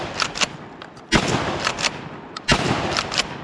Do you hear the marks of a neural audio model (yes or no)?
no